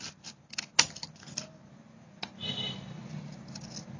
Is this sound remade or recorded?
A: recorded